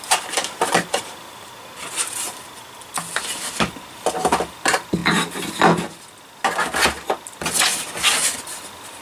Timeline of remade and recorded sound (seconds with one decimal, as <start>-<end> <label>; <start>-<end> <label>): 0.0-9.0 recorded